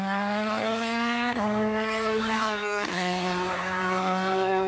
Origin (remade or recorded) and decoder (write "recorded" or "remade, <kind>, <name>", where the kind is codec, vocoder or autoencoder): remade, codec, SNAC